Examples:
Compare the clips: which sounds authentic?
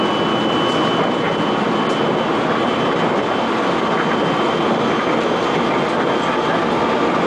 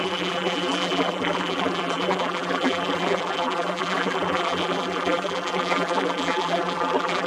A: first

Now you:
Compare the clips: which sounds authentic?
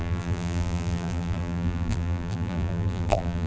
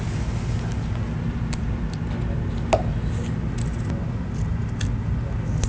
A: second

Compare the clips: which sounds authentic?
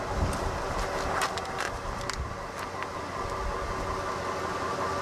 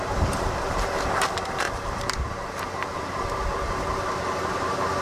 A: first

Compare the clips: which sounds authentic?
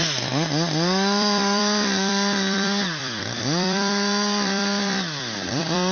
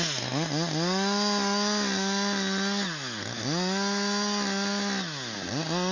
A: second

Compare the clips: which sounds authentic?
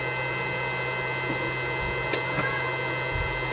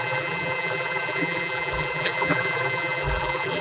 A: first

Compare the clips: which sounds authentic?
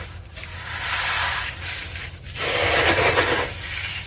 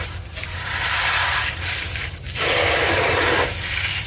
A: first